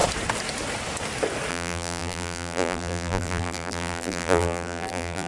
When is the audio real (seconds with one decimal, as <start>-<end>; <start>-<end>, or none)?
0.0-1.5